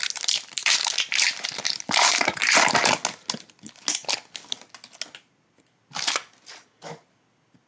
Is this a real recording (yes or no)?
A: yes